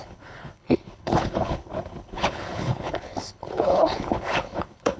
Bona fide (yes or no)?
no